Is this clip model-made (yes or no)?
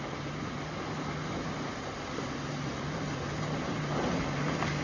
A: no